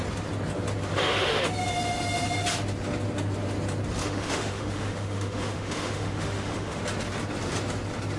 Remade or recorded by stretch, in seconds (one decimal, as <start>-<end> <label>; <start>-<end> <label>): 0.0-0.9 recorded; 0.9-1.4 remade; 1.4-4.0 recorded; 4.0-6.8 remade; 6.8-8.2 recorded